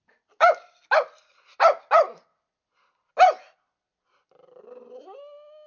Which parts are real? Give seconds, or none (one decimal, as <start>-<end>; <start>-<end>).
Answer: 0.0-5.7